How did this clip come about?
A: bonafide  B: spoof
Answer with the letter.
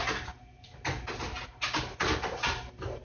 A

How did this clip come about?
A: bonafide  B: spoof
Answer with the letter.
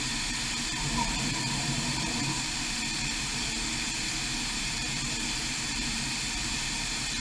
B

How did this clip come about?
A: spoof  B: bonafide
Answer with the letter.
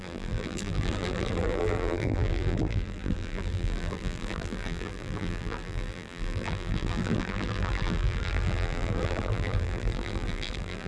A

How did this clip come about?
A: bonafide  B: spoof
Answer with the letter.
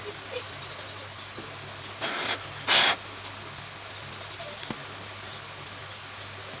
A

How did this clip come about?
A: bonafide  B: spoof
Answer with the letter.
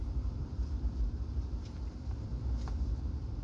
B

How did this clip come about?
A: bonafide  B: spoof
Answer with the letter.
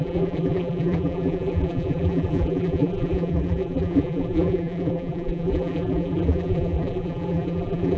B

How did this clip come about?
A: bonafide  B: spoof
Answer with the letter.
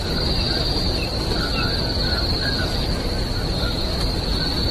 A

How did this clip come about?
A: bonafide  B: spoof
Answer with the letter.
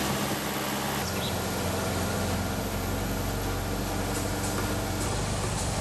A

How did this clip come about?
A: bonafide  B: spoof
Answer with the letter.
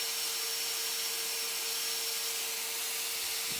B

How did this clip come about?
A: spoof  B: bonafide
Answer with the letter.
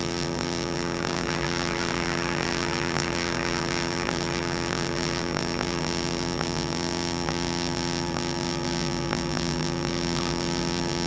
A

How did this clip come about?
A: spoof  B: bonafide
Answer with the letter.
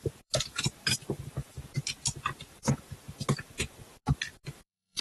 A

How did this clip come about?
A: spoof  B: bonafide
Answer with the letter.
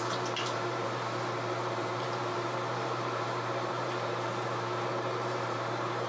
A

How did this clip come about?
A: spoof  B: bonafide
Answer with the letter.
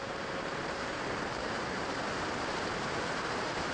A